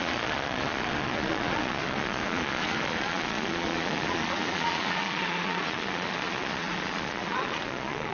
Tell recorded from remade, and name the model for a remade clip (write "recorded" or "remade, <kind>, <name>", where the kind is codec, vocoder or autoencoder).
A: remade, vocoder, Vocos